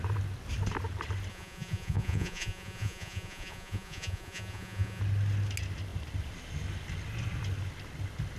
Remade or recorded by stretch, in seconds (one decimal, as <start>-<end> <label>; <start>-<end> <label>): 0.0-1.3 recorded; 1.3-5.0 remade; 5.0-8.4 recorded